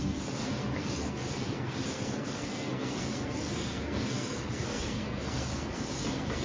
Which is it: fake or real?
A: fake